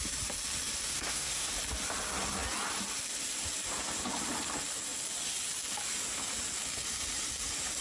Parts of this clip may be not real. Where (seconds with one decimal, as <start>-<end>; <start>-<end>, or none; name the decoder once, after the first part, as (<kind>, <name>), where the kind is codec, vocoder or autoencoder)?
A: 0.9-1.5 (codec, SNAC)